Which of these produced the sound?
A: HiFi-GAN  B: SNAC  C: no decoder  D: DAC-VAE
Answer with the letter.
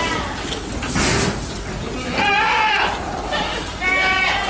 C